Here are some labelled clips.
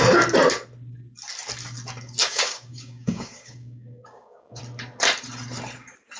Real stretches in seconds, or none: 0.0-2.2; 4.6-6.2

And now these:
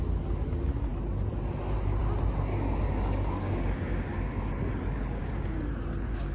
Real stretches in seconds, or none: 0.0-2.5; 4.5-5.2; 5.7-6.3

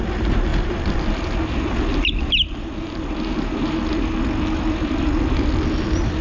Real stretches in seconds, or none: 0.0-6.2